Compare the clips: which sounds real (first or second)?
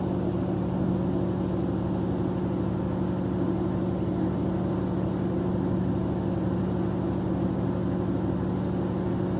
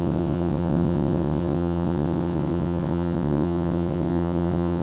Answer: first